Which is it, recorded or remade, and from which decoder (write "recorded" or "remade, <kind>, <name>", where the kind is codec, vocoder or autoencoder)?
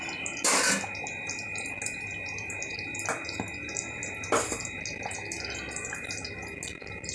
recorded